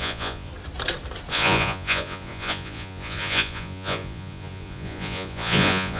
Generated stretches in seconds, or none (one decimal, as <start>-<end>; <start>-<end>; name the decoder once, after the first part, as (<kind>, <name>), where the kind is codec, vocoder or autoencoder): 0.0-0.5 (vocoder, Vocos); 1.3-6.0